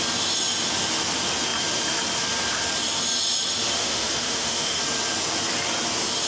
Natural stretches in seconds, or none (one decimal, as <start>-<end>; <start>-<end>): 0.0-3.8; 4.8-6.3